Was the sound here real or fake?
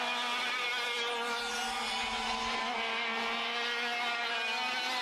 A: real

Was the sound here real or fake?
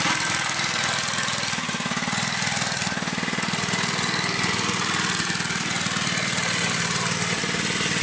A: real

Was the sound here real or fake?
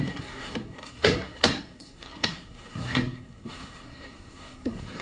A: fake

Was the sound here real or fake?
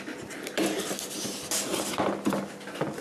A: real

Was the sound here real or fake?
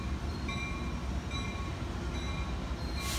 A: real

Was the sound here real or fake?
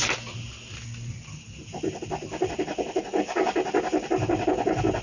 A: real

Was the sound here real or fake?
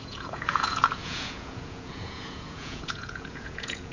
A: fake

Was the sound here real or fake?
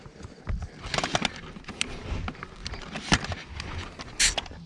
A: real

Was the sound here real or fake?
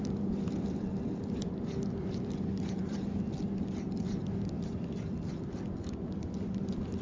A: fake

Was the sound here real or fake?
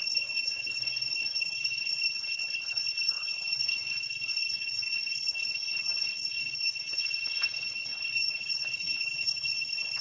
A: fake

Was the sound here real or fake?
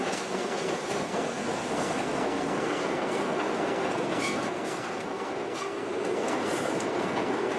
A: fake